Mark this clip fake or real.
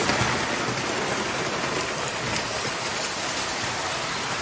real